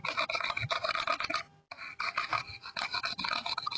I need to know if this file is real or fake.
real